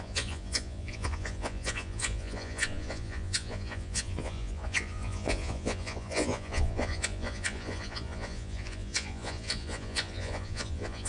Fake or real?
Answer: fake